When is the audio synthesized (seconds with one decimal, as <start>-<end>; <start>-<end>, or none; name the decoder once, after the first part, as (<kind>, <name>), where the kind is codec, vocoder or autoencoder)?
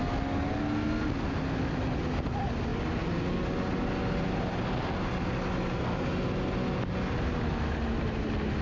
none